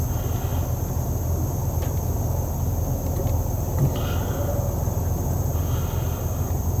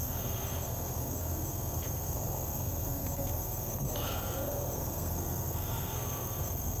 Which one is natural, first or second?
first